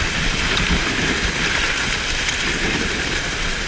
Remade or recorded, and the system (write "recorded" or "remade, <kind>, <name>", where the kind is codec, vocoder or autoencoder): recorded